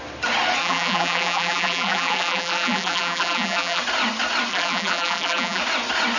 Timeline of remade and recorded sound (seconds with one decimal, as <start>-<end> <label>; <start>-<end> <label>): 0.0-0.6 recorded; 0.6-3.8 remade; 3.8-4.5 recorded; 4.5-5.6 remade; 5.6-6.2 recorded